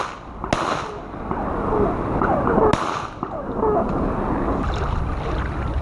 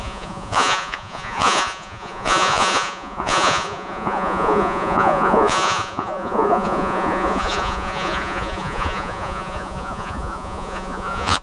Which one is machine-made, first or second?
second